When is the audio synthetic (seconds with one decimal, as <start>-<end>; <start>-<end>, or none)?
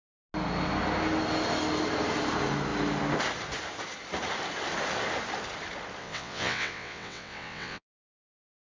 6.0-8.1